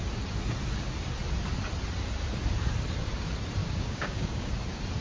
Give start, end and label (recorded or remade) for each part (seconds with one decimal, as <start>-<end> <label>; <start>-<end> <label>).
0.0-3.6 recorded; 3.6-4.5 remade; 4.5-5.0 recorded